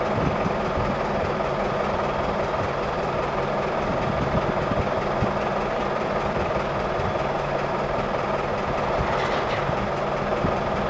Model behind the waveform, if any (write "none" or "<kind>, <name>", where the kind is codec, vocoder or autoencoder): vocoder, BigVGAN v2